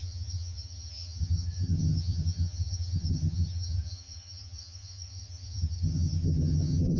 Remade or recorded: remade